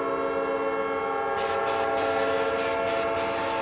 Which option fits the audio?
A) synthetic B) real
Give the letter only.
B